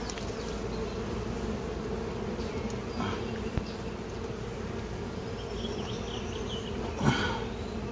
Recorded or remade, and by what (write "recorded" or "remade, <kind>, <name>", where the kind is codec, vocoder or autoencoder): recorded